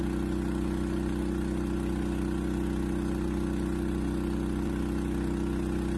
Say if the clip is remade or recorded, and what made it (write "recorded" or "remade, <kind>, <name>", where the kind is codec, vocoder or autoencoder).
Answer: recorded